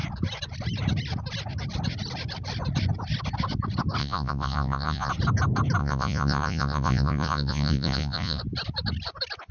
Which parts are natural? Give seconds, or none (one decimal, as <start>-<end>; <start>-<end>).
0.0-4.0; 5.1-5.8; 8.4-9.5